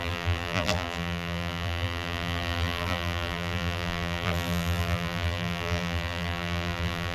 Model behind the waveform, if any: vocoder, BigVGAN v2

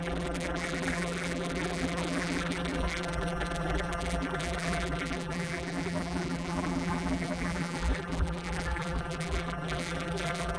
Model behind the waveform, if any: vocoder, BigVGAN v2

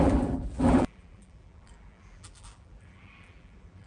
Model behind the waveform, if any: vocoder, BigVGAN v2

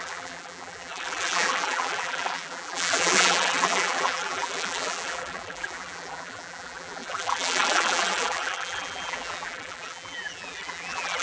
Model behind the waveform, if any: vocoder, BigVGAN v2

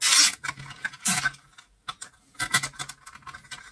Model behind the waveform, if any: none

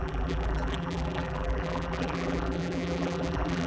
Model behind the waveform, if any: vocoder, BigVGAN v2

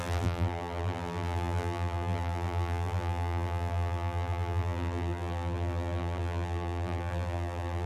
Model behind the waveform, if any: vocoder, BigVGAN v2